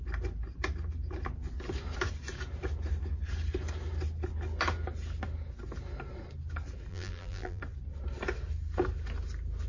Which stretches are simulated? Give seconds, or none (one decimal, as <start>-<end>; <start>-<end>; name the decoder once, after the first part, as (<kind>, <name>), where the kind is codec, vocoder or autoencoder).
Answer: 6.9-7.6 (vocoder, BigVGAN v2)